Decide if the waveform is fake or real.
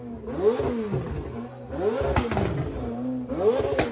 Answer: real